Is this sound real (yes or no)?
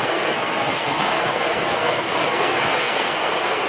no